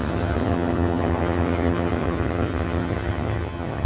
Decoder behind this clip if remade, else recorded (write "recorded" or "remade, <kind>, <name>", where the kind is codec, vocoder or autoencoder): remade, vocoder, HiFi-GAN